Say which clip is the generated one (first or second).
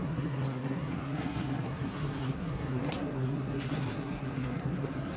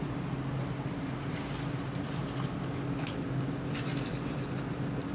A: first